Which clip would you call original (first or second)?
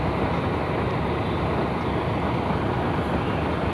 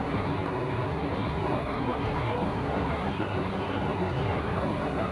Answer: first